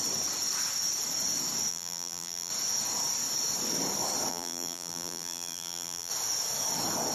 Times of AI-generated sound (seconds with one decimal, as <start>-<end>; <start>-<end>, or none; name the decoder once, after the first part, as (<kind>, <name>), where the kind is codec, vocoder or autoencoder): 1.7-2.5 (vocoder, BigVGAN v2); 4.3-6.1